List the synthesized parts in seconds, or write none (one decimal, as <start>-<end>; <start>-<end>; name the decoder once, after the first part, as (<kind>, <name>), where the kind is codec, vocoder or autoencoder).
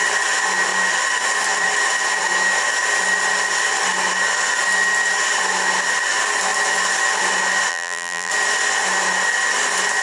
7.7-8.3 (vocoder, BigVGAN v2)